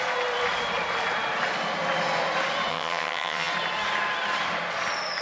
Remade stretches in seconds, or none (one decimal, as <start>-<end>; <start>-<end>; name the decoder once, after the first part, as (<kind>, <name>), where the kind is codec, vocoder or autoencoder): 2.7-3.5 (vocoder, HiFi-GAN)